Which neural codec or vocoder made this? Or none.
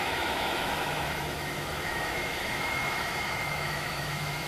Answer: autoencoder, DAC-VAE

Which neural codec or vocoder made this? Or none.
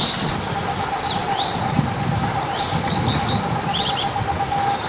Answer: none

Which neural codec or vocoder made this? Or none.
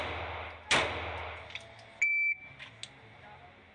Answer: none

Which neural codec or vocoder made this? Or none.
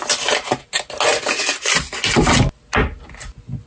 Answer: none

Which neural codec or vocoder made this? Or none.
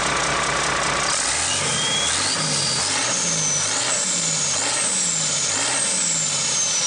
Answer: none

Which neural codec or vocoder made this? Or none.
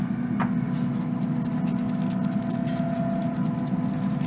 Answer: none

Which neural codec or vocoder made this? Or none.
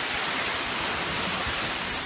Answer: none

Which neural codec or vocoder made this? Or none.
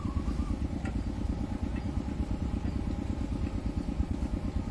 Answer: none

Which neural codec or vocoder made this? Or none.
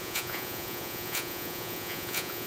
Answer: vocoder, Vocos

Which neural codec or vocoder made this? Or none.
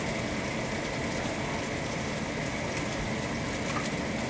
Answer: none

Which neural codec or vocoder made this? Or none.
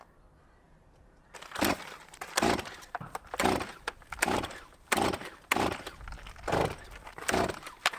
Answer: none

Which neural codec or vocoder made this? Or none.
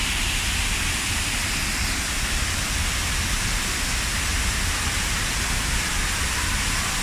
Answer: none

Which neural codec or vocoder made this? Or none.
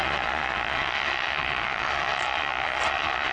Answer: vocoder, Vocos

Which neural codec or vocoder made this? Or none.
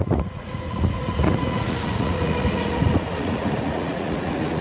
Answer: vocoder, Vocos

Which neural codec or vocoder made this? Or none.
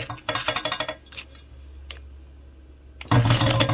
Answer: none